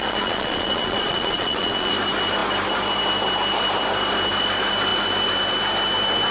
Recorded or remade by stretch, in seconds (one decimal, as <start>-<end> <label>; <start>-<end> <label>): 0.0-1.9 remade; 1.9-6.3 recorded